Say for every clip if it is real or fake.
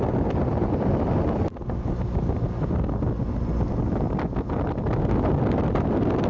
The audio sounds real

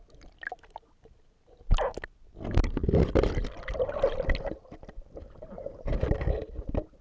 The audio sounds real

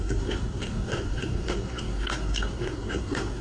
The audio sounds fake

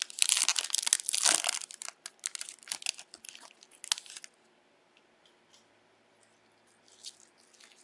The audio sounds real